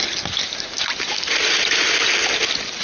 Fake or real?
real